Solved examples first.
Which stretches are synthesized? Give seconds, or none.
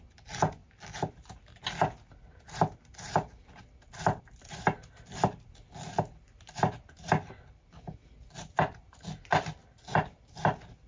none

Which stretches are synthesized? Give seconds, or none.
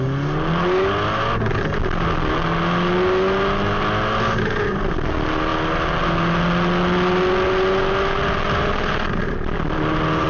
none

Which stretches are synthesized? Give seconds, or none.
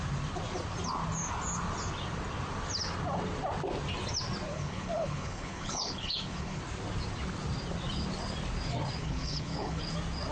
4.5-6.6 (codec, HILCodec); 9.0-9.8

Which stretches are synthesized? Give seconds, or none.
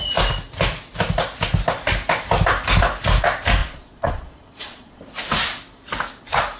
3.6-5.0 (vocoder, Vocos)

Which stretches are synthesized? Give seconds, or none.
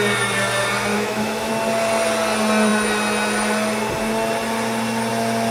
0.9-1.5 (autoencoder, DAC-VAE)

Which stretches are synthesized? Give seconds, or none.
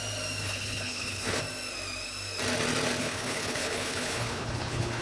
0.4-1.4 (codec, HILCodec); 3.0-5.0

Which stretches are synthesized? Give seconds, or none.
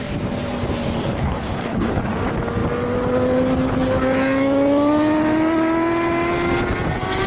1.0-2.1 (codec, HILCodec)